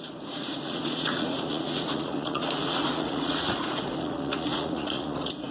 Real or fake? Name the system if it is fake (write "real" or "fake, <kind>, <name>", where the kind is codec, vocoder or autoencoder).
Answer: fake, vocoder, Vocos